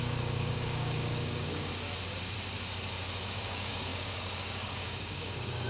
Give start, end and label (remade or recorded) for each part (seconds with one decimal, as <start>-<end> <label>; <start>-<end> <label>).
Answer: 0.0-1.7 remade; 1.7-3.3 recorded; 3.3-5.7 remade